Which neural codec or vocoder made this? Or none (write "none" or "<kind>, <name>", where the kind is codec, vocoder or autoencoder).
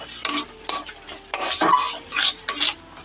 none